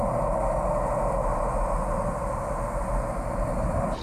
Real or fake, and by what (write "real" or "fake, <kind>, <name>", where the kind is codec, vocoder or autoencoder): real